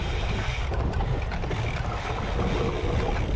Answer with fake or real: real